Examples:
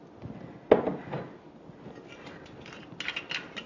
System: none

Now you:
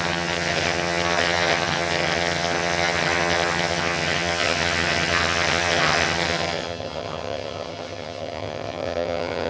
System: vocoder, HiFi-GAN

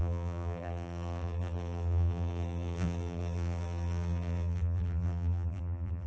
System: vocoder, BigVGAN v2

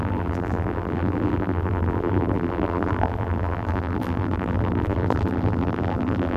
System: vocoder, BigVGAN v2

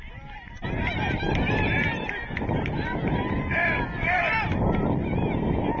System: none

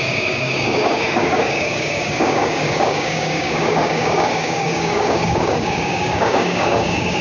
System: codec, DAC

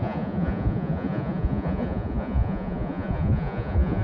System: vocoder, Vocos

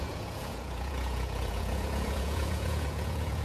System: vocoder, Vocos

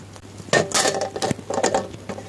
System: none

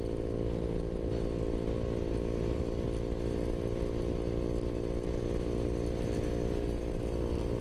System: none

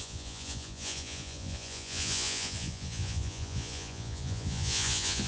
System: vocoder, Vocos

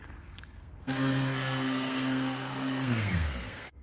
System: codec, SNAC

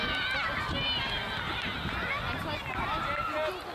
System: none